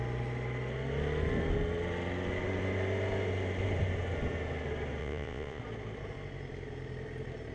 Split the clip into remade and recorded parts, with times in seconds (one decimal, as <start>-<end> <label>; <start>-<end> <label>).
0.0-5.0 recorded; 5.0-5.6 remade; 5.6-7.5 recorded